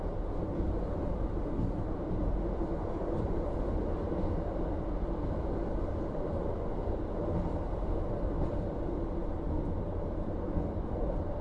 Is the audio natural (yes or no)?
yes